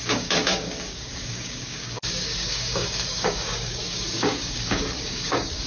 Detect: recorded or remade remade